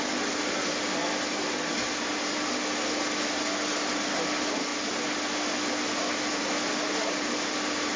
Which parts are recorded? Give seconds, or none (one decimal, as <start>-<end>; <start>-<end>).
0.0-8.0